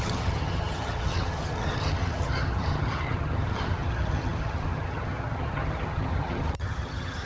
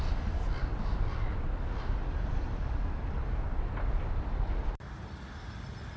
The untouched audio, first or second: second